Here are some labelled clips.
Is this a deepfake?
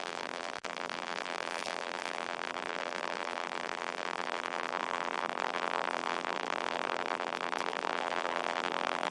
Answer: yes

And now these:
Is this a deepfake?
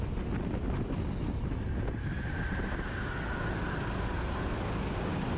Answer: no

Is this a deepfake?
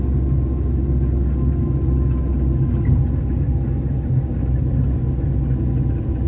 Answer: no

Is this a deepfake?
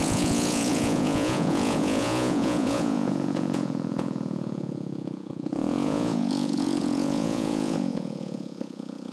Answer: yes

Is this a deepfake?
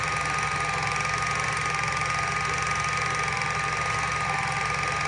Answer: no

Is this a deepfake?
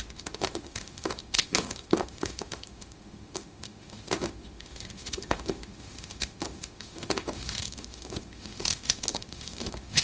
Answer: yes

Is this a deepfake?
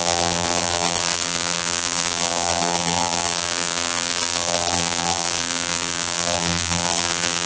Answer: yes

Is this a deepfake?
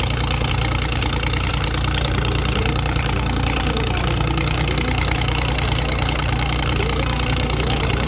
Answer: yes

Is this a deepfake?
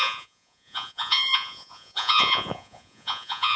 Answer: yes